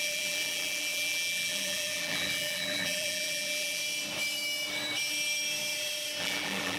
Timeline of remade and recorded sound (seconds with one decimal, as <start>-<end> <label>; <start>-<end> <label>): 0.0-3.8 remade; 3.8-6.2 recorded; 6.2-6.8 remade